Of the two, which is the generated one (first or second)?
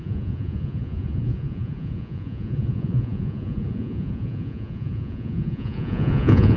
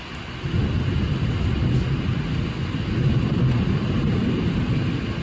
first